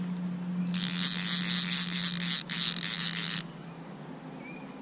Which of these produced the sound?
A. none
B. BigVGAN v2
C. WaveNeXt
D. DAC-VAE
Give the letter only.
A